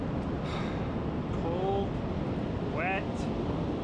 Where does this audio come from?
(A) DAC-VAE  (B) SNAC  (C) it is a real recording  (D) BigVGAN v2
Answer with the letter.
C